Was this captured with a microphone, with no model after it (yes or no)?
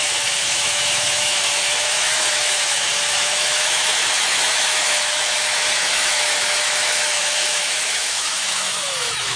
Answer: no